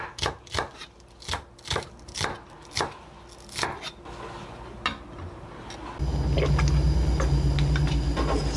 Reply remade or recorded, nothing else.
recorded